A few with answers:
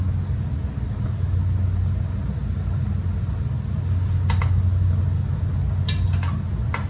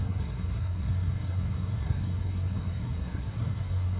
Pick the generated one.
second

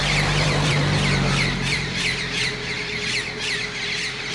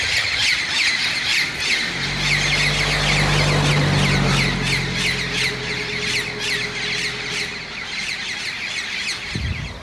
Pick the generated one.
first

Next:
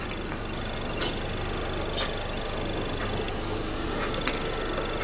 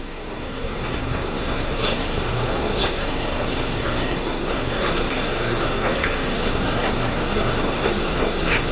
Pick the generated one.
second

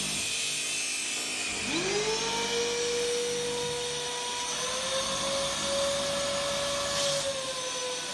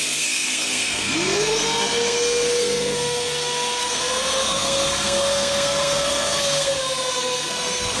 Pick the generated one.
second